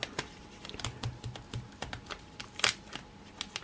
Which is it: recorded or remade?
recorded